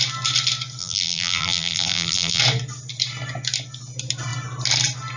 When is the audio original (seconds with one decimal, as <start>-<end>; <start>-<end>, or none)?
0.0-0.8; 2.4-5.2